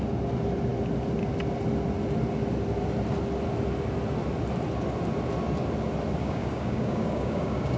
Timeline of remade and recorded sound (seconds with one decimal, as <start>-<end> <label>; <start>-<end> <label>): 0.0-6.2 recorded; 6.2-7.8 remade